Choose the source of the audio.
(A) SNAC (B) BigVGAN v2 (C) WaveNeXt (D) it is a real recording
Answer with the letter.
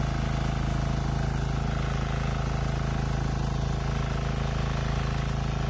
D